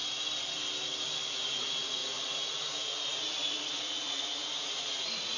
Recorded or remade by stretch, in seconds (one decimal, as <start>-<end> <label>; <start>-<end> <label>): 0.0-1.3 recorded; 1.3-5.4 remade